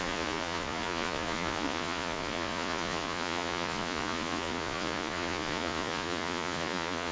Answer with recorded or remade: remade